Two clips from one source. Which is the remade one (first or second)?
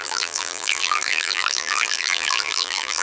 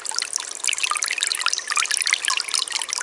first